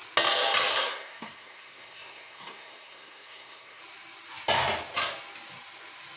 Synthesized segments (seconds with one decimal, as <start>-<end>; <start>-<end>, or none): 0.7-3.8